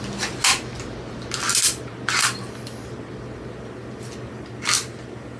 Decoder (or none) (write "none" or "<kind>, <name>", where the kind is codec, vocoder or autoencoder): none